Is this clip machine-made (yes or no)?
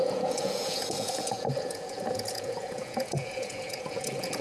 yes